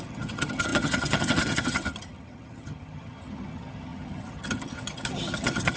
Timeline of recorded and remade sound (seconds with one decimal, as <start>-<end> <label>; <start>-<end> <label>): 0.0-5.8 remade